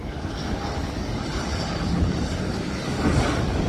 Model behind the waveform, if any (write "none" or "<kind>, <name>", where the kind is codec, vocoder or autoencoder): codec, DAC